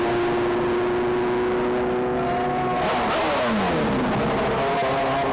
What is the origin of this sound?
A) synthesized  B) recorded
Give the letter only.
B